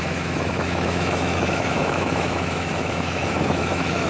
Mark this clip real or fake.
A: fake